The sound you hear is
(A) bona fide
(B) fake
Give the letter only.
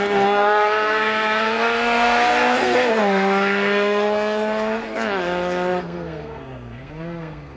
B